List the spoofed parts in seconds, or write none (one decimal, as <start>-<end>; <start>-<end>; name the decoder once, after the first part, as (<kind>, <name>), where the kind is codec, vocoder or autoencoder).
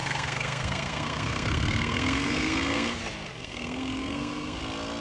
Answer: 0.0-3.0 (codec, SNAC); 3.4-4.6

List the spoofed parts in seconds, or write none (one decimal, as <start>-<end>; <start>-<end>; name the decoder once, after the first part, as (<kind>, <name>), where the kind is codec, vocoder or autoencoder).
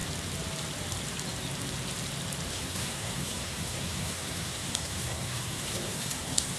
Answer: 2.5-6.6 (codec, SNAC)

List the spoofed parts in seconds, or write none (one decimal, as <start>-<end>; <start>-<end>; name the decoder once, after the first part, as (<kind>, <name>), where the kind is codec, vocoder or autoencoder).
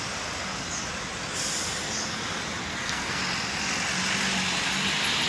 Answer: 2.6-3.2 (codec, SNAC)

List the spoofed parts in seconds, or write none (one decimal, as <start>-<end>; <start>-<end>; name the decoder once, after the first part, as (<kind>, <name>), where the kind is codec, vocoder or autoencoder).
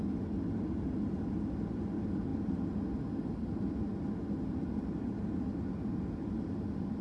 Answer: none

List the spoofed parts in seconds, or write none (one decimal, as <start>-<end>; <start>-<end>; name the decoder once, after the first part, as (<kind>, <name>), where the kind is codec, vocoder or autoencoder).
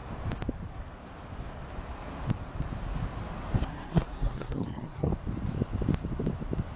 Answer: 3.6-5.1 (codec, SNAC)